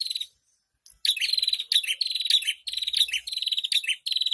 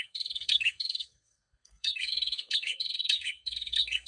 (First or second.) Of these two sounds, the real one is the first